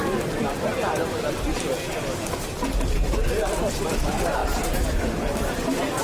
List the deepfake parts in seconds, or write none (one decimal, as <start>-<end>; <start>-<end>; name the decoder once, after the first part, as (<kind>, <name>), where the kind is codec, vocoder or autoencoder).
0.0-0.7 (vocoder, BigVGAN v2); 2.5-6.0